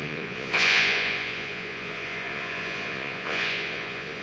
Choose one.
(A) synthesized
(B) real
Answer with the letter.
A